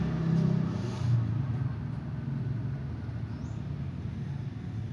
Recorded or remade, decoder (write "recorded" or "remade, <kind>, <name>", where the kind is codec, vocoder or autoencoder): recorded